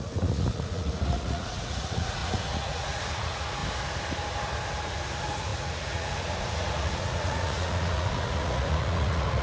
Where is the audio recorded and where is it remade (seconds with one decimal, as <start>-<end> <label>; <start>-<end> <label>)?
0.0-3.6 remade; 3.6-4.8 recorded; 4.8-9.4 remade